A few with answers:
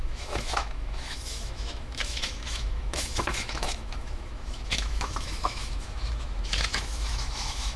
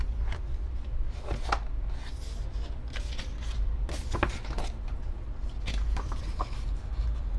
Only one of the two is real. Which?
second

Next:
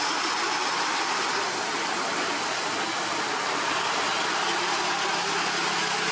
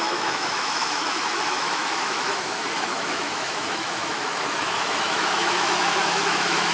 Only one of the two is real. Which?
first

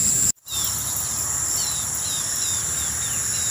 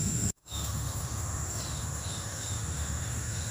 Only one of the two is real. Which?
first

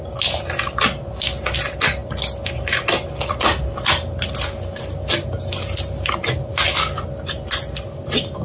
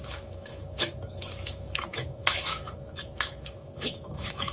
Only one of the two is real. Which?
first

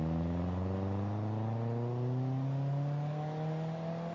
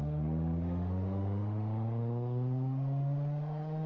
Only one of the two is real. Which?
first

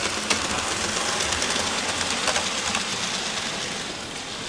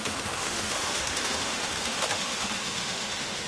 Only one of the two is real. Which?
first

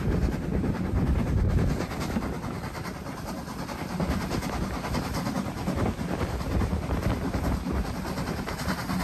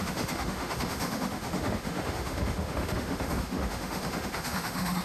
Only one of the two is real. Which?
first